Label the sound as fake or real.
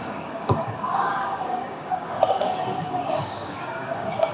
fake